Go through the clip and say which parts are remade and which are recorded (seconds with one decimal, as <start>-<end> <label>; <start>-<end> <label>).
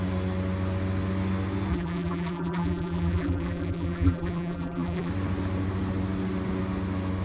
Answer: 0.0-1.7 recorded; 1.7-5.1 remade; 5.1-7.2 recorded